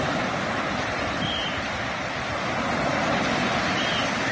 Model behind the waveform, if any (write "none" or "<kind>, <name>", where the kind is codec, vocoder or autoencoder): none